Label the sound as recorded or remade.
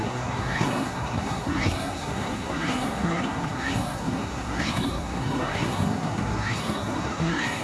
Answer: remade